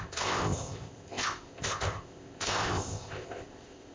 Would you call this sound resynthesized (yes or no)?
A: yes